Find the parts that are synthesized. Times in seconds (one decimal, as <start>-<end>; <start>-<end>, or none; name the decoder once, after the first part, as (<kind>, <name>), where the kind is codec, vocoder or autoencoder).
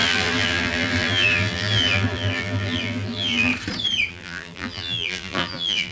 0.0-3.5 (vocoder, BigVGAN v2); 4.1-5.9